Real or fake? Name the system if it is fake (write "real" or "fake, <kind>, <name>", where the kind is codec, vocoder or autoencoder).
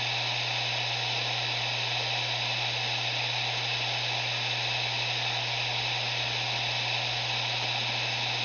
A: real